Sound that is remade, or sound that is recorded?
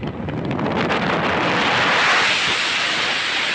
recorded